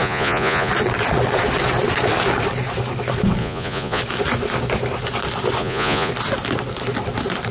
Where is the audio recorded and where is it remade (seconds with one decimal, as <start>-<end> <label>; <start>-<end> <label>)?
0.0-0.7 remade; 0.7-3.4 recorded; 3.4-4.0 remade; 4.0-5.6 recorded; 5.6-6.1 remade; 6.1-7.5 recorded